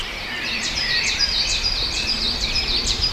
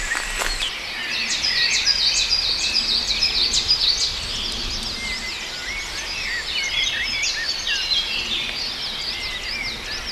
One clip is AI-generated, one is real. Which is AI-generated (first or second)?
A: first